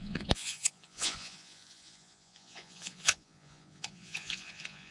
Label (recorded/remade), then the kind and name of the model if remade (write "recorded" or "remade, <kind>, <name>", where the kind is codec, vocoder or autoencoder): remade, vocoder, Vocos